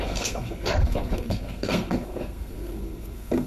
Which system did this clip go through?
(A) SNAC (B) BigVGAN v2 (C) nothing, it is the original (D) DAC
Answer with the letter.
A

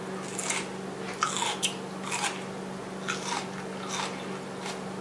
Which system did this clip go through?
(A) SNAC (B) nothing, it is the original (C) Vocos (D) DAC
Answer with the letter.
B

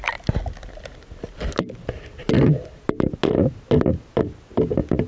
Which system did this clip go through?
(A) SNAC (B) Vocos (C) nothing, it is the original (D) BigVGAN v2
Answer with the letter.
C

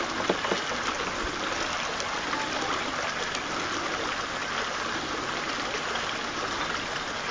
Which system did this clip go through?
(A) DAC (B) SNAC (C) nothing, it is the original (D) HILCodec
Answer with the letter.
C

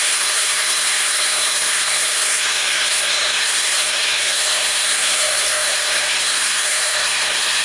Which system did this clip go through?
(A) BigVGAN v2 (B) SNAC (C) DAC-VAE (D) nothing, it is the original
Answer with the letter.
B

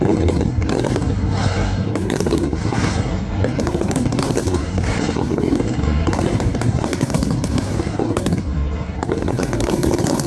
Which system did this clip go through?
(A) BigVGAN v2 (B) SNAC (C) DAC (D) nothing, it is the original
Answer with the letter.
B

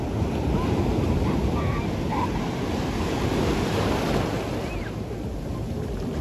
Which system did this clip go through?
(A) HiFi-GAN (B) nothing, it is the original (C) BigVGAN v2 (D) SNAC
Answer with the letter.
B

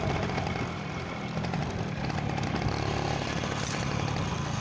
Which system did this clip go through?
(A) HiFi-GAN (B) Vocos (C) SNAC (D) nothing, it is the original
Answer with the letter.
D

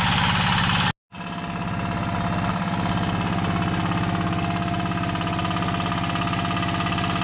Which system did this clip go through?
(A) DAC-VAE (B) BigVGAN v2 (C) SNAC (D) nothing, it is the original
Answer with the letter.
D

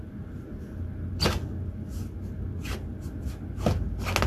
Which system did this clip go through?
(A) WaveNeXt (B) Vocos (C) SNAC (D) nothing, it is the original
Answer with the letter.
D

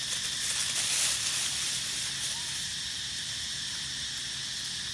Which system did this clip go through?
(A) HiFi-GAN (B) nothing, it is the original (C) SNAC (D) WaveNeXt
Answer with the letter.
B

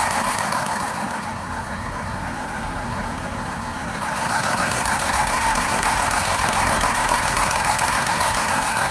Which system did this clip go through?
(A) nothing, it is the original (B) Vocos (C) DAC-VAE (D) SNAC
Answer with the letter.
D